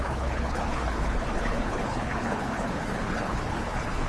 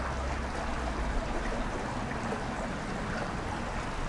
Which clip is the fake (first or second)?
first